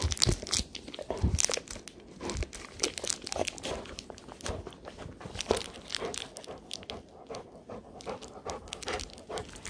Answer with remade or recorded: recorded